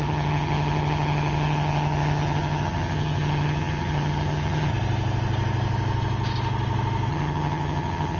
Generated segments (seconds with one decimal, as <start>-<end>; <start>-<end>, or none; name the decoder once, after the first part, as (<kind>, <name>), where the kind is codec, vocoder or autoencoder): 0.0-4.7 (vocoder, HiFi-GAN); 7.1-8.2